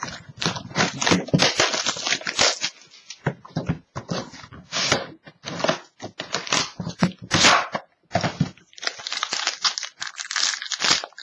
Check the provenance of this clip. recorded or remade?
recorded